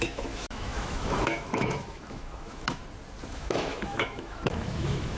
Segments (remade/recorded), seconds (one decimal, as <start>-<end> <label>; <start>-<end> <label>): 0.0-2.8 remade; 2.8-3.3 recorded; 3.3-5.2 remade